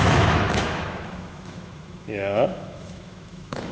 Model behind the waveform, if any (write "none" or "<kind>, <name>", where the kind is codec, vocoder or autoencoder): autoencoder, DAC-VAE